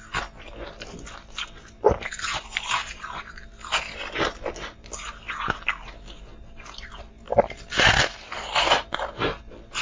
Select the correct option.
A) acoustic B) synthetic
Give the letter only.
A